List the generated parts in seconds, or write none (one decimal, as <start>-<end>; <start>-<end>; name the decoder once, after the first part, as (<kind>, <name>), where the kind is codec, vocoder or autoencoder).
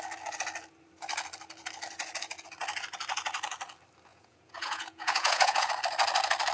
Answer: 4.1-5.7 (vocoder, Vocos)